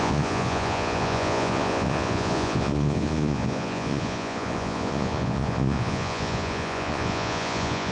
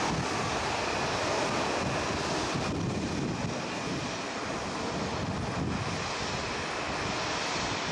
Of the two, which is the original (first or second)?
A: second